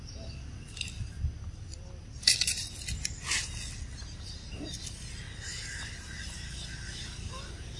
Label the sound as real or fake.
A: real